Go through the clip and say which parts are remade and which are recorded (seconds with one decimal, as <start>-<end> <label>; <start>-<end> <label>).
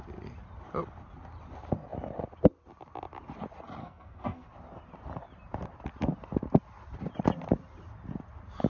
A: 0.0-3.8 recorded; 3.8-4.5 remade; 4.5-8.7 recorded